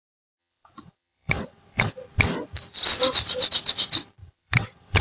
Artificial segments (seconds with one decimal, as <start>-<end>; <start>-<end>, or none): 0.4-1.9; 4.2-5.0